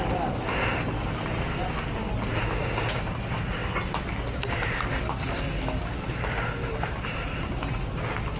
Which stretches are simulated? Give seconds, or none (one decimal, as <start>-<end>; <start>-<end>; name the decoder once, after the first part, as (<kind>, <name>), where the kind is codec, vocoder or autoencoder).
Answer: none